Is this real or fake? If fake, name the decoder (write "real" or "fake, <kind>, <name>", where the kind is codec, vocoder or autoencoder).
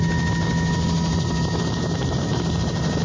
real